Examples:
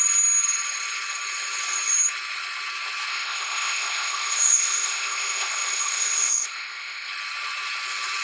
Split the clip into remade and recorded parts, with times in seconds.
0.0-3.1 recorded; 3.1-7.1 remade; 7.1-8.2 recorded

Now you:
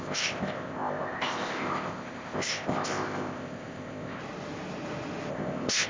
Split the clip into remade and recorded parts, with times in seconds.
0.0-4.2 remade; 4.2-5.3 recorded; 5.3-5.9 remade